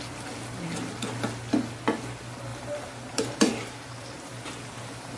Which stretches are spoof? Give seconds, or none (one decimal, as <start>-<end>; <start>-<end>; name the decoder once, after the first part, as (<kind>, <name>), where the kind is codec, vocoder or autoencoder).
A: 2.5-5.2 (vocoder, BigVGAN v2)